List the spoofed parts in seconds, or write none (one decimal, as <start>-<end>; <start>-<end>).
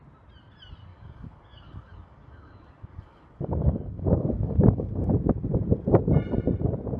0.9-5.1